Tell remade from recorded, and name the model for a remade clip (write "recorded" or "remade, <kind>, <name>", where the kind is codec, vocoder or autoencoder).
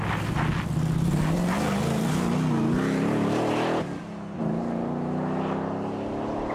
recorded